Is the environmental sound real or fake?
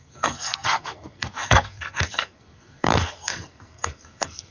fake